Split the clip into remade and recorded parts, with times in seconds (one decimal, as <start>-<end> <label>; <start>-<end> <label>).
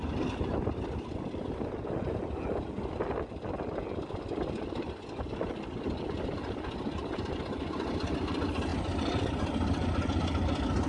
0.0-10.9 recorded